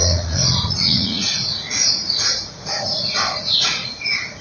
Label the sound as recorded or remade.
remade